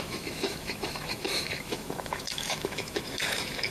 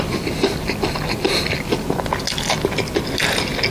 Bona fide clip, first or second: second